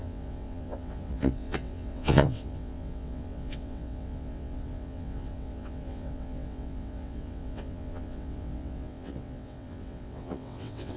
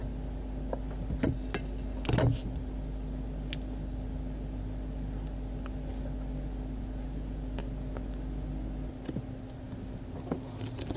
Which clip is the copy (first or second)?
first